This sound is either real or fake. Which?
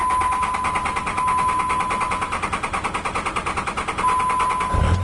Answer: real